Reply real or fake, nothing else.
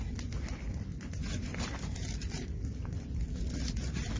real